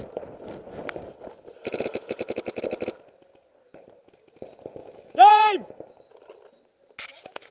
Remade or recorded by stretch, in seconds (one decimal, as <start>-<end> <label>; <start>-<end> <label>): 0.0-1.6 recorded; 1.6-2.6 remade; 2.6-4.8 recorded; 4.8-5.7 remade; 5.7-7.5 recorded